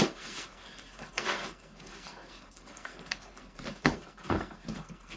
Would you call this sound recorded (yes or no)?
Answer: no